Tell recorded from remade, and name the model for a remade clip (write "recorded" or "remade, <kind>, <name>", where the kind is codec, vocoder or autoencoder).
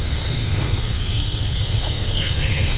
remade, codec, SNAC